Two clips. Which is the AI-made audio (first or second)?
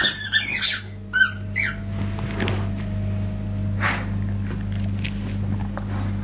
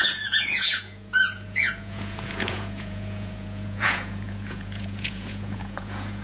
second